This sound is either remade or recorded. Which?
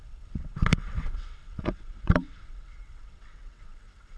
remade